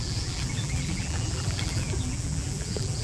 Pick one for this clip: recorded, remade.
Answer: remade